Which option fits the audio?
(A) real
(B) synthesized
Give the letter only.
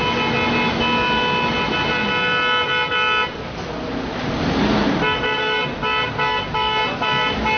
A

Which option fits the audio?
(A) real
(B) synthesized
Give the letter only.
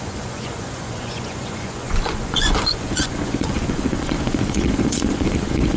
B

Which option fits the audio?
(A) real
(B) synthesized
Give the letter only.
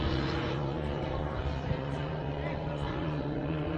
B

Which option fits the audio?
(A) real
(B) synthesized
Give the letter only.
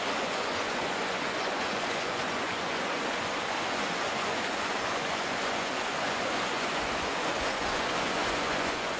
B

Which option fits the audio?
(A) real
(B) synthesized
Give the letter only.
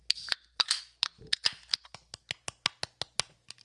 A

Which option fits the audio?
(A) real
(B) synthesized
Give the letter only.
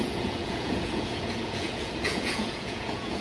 B